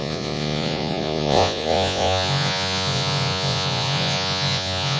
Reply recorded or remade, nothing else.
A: remade